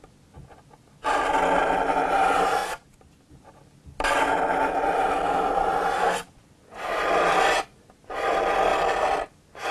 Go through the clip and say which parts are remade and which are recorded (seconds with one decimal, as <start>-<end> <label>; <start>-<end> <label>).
0.0-9.7 recorded